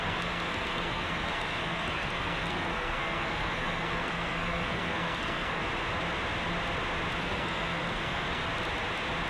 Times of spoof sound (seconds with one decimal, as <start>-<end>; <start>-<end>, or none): 0.0-5.6; 7.2-8.4